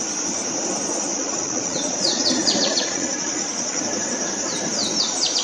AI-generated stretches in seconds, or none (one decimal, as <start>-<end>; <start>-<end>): 1.1-3.8